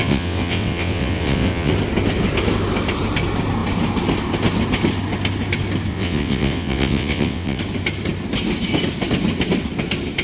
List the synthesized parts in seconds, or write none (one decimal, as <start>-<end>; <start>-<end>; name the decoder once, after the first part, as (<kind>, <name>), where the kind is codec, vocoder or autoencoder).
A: 0.0-1.7 (vocoder, WaveNeXt); 5.9-7.6